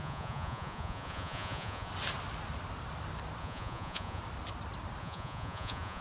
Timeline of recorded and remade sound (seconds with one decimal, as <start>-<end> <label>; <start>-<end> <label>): 0.0-1.9 remade; 1.9-3.4 recorded; 3.4-4.2 remade; 4.2-5.0 recorded; 5.0-6.0 remade